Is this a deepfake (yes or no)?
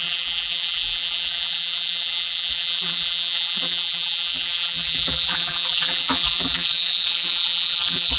yes